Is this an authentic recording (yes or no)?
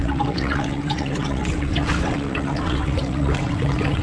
no